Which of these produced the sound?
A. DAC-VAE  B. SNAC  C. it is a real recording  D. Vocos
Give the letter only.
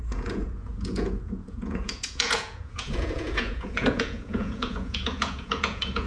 D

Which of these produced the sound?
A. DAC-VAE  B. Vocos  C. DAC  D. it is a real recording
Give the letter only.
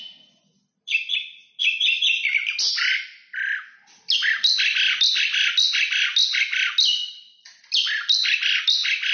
D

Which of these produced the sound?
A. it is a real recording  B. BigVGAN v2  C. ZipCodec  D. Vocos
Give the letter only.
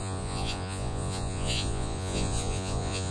D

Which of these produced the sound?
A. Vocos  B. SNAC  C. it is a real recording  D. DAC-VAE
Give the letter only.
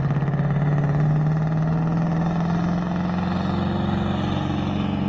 C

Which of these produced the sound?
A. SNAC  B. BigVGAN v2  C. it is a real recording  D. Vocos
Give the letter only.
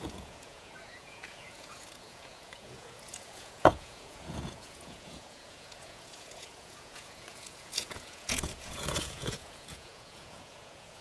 D